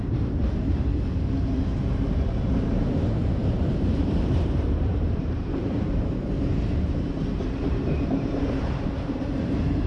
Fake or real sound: fake